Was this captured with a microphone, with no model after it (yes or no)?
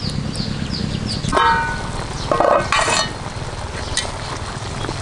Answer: yes